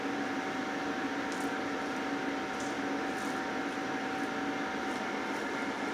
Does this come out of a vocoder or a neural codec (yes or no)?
no